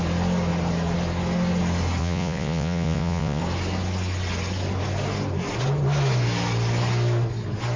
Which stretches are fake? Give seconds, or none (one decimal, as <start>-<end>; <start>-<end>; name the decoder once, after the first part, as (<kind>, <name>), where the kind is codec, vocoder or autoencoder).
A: 2.0-3.4 (vocoder, Vocos)